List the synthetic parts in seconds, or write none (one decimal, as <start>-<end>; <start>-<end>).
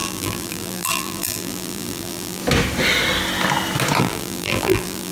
0.0-2.4; 4.0-5.1